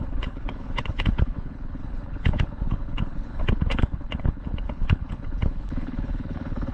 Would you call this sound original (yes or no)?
no